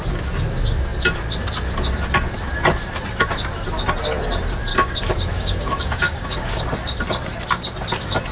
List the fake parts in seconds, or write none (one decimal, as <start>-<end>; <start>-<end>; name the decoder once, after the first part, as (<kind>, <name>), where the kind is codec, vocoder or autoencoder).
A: 4.7-6.6 (codec, DAC)